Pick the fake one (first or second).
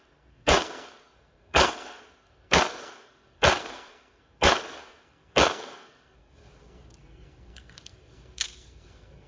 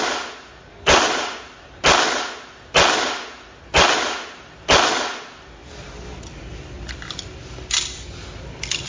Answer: first